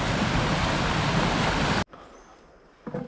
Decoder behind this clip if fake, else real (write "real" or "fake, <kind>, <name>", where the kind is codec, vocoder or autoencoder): real